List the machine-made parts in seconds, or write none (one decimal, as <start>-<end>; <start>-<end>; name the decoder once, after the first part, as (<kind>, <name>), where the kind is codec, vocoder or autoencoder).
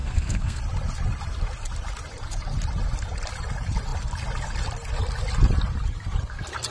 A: 0.0-0.6 (codec, SNAC)